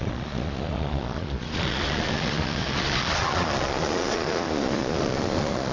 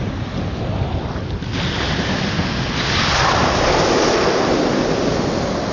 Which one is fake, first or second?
first